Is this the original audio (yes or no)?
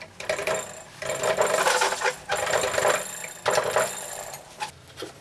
yes